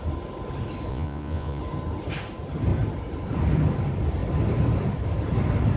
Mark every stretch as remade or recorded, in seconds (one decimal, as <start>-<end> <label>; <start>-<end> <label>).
0.0-0.9 recorded; 0.9-1.6 remade; 1.6-5.8 recorded